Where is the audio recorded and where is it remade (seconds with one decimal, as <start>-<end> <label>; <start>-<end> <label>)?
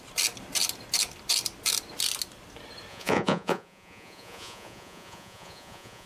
0.0-2.9 recorded; 2.9-6.1 remade